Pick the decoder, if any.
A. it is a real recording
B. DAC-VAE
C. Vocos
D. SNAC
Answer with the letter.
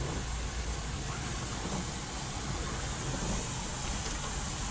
A